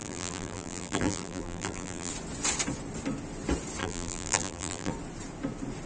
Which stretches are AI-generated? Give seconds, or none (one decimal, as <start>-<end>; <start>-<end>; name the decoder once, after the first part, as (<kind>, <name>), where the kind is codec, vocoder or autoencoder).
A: 0.0-2.1 (vocoder, BigVGAN v2); 3.8-4.9